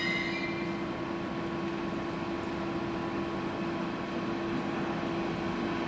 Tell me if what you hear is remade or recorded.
recorded